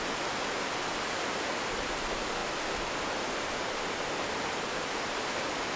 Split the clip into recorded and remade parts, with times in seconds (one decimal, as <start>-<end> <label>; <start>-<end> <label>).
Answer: 0.0-0.9 recorded; 0.9-1.5 remade; 1.5-5.8 recorded